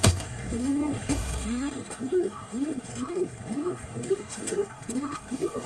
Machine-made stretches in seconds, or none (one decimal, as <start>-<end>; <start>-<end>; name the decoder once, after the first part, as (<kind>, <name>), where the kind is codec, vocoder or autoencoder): 0.0-5.7 (codec, SNAC)